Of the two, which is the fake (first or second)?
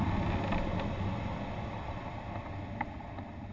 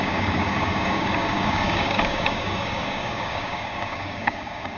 second